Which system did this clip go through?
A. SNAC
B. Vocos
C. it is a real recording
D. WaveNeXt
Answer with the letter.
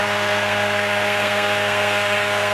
A